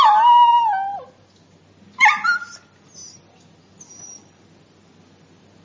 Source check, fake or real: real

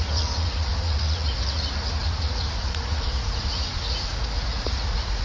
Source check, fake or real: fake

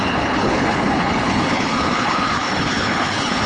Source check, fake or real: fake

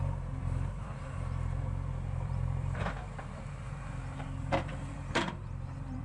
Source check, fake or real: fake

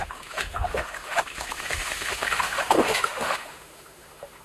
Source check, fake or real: fake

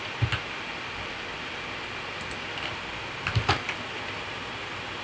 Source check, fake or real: real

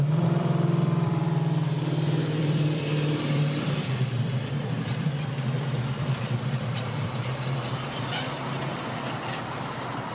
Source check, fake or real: fake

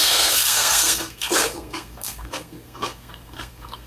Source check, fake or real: fake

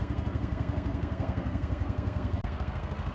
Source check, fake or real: fake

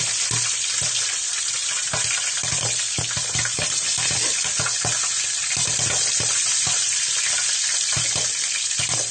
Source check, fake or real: real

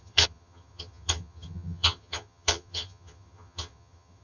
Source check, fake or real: fake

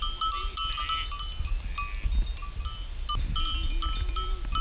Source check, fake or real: real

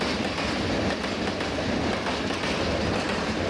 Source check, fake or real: real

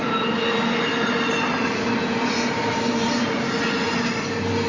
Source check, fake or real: real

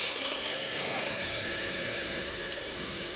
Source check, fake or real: fake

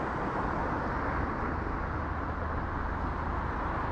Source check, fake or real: real